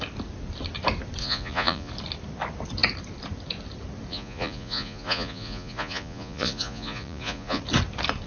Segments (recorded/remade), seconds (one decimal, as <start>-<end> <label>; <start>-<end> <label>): 0.0-1.2 recorded; 1.2-1.9 remade; 1.9-4.1 recorded; 4.1-7.6 remade; 7.6-8.3 recorded